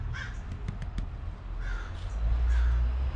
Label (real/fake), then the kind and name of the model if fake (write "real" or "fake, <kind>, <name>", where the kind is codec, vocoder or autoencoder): real